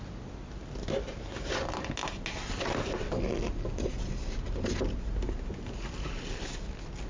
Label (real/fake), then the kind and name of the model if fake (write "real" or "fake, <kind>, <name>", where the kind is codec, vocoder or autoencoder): real